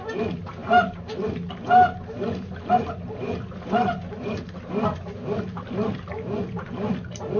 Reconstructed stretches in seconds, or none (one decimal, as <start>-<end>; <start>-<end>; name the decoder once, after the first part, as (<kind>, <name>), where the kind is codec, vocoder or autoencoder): none